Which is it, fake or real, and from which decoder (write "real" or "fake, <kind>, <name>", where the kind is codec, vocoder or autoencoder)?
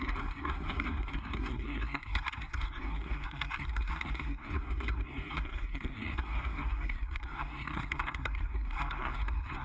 fake, codec, SNAC